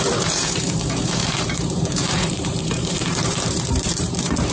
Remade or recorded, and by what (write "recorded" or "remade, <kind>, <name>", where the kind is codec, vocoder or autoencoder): remade, vocoder, BigVGAN v2